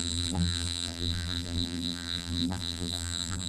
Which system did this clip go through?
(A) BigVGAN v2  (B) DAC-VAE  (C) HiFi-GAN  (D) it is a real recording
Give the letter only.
A